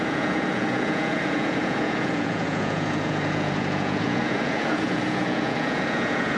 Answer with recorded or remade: remade